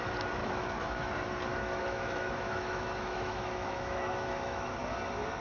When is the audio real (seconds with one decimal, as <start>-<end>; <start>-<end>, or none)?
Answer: 0.0-0.4; 1.1-1.5; 4.7-5.4